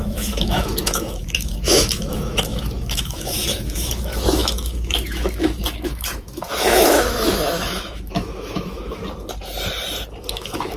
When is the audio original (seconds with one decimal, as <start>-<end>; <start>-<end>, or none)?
9.0-10.3